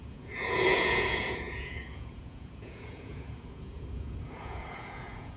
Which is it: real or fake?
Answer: fake